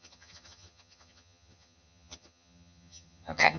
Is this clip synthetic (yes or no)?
yes